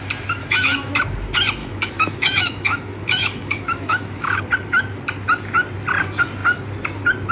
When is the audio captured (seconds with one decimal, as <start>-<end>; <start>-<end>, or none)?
0.0-0.4; 1.0-1.6; 4.4-7.3